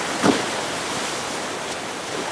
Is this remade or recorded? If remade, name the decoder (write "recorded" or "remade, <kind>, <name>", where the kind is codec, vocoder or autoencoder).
recorded